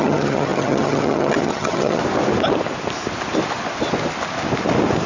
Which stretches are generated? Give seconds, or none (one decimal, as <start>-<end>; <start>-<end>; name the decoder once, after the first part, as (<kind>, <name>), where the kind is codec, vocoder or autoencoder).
0.0-2.0 (vocoder, HiFi-GAN)